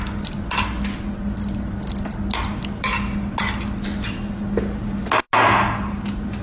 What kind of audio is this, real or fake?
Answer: real